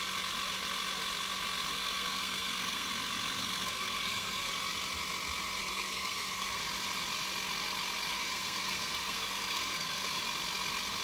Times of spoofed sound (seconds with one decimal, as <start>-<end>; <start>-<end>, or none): 1.7-2.9; 3.4-4.5; 5.6-6.6; 8.1-10.2